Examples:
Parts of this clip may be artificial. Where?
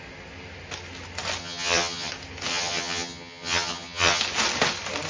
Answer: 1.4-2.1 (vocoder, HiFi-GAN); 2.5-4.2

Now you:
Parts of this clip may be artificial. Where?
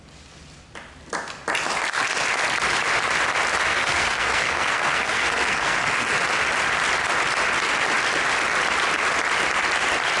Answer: 3.7-6.1 (codec, SNAC)